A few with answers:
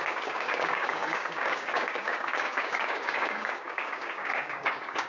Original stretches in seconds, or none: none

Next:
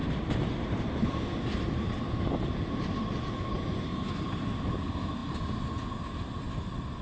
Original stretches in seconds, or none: 0.0-7.0

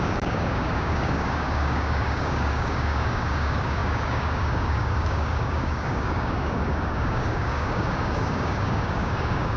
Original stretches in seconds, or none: none

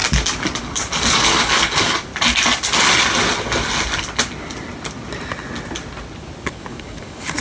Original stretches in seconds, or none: 0.0-0.6; 2.1-6.4

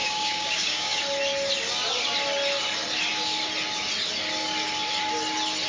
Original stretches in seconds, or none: 1.0-5.7

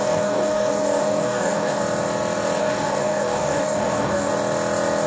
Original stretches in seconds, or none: 1.8-2.6; 4.3-5.1